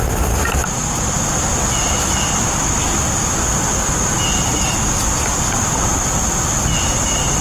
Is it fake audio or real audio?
real